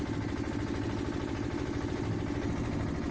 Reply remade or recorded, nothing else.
recorded